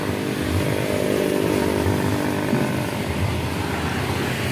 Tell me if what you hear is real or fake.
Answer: real